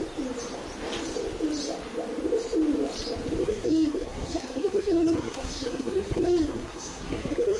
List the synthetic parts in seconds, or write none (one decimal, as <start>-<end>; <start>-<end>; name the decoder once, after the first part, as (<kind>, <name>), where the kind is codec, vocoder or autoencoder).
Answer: 3.4-7.6 (codec, SNAC)